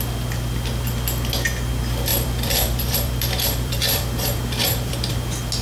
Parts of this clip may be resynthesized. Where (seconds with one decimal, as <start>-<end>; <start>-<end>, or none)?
2.1-5.1